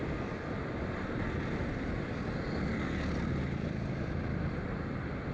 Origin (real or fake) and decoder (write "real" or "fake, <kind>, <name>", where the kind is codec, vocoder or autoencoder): real